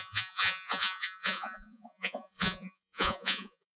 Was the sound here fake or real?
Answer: fake